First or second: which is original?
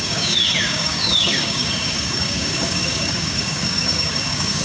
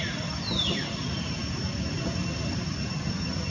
second